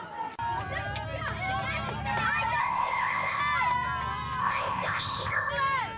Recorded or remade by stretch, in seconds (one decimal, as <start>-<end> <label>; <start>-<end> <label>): 0.0-2.6 recorded; 2.6-3.4 remade; 3.4-4.4 recorded; 4.4-5.5 remade; 5.5-6.0 recorded